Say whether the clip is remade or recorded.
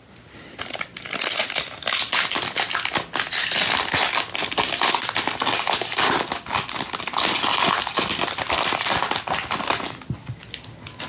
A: recorded